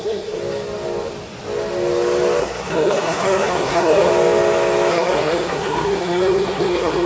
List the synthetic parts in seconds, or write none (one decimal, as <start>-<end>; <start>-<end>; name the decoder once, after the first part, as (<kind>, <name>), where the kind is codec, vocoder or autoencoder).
0.0-0.4 (codec, SNAC); 2.4-4.1; 4.9-7.1